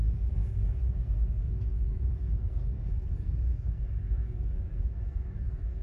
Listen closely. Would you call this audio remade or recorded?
remade